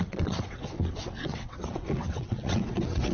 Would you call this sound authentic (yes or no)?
no